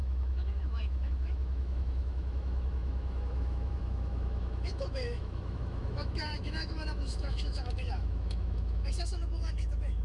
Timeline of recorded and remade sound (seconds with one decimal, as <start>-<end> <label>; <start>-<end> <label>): 0.0-10.0 remade